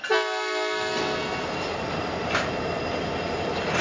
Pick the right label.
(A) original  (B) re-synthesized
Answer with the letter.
A